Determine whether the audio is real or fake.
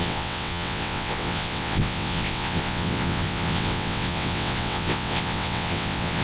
fake